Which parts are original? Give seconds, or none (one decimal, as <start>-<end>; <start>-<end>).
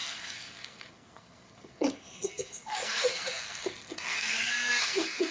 none